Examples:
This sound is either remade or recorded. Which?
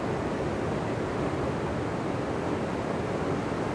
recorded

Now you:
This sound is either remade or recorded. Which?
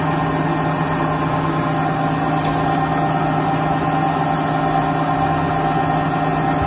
recorded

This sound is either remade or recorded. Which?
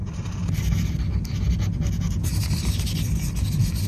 recorded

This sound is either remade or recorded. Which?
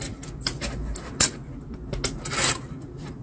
recorded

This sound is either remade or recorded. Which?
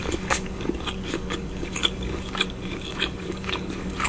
remade